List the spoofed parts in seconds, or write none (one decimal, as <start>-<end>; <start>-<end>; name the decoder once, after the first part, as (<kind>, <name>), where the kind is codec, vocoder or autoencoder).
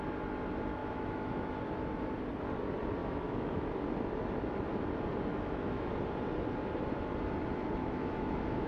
0.8-1.6 (autoencoder, DAC-VAE); 3.0-3.7; 5.3-5.9; 7.8-8.7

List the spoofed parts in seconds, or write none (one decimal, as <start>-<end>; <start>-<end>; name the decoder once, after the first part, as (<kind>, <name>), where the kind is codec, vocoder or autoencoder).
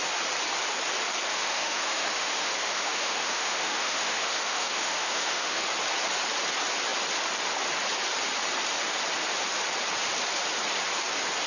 1.3-5.6 (autoencoder, DAC-VAE)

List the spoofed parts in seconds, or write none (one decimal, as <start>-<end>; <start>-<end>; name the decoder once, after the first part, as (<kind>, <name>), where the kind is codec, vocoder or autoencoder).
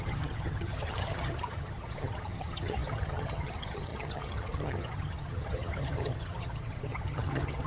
0.0-7.7 (vocoder, HiFi-GAN)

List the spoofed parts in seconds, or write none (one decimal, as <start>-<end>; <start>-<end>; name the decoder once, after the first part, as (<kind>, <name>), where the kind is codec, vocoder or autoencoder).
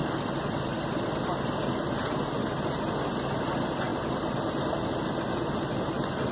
none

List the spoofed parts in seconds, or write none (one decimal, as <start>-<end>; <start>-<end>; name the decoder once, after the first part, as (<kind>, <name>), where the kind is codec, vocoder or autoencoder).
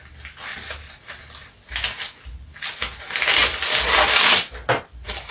none